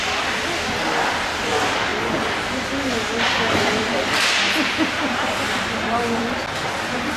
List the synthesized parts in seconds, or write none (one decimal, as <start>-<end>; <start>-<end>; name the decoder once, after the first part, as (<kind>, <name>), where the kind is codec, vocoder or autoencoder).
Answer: none